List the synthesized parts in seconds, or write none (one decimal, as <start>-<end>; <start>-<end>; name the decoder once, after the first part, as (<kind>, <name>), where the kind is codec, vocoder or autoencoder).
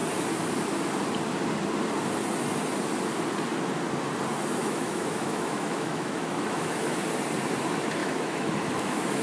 4.6-7.0 (autoencoder, DAC-VAE); 8.0-9.2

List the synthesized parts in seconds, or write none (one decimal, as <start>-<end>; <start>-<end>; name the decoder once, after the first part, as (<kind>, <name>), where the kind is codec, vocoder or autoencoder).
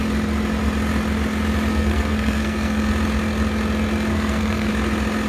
1.7-2.9 (codec, SNAC); 4.1-4.7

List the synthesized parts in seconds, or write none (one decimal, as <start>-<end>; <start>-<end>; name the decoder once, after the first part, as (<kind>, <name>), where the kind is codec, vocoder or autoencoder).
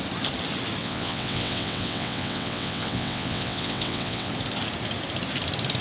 0.8-4.3 (vocoder, WaveNeXt)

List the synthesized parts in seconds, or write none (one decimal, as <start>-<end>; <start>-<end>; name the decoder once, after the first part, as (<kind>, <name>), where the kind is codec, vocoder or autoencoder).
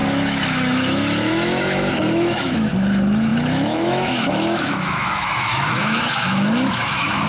0.0-7.3 (autoencoder, DAC-VAE)